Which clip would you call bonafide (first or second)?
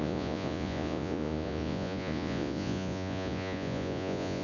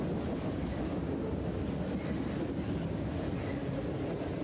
second